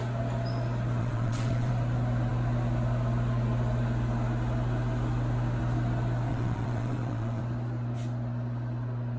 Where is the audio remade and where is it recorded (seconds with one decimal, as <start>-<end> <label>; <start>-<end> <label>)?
0.0-1.0 recorded; 1.0-1.7 remade; 1.7-6.3 recorded; 6.3-7.4 remade; 7.4-9.2 recorded